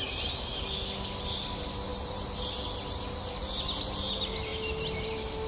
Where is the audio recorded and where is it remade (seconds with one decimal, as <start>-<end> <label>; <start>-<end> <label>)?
0.0-5.5 recorded